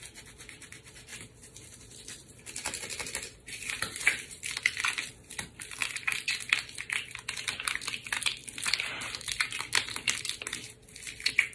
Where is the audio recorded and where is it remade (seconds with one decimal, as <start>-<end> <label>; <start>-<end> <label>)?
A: 0.0-1.1 recorded; 1.1-5.1 remade; 5.1-5.8 recorded; 5.8-6.5 remade; 6.5-11.5 recorded